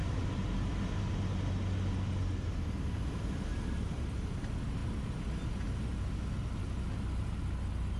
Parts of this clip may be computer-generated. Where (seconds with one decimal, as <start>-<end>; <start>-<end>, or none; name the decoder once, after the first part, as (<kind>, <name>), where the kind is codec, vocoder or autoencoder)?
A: 0.0-1.0 (vocoder, BigVGAN v2)